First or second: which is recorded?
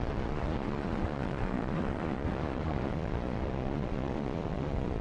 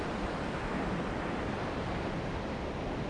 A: second